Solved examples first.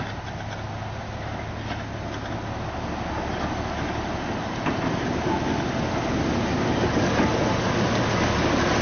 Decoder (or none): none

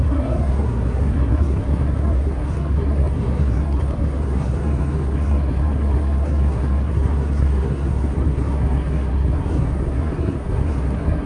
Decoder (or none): codec, SNAC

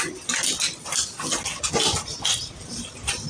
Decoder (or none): none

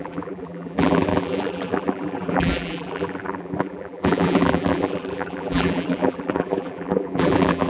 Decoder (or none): vocoder, BigVGAN v2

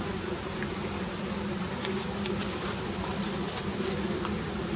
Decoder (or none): none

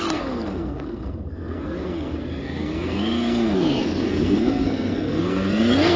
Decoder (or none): codec, SNAC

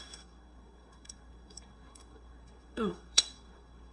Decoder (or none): codec, SNAC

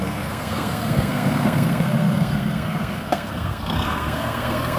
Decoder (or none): codec, SNAC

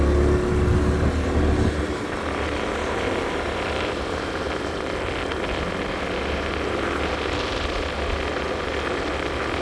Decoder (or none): none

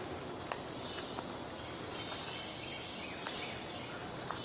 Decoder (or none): none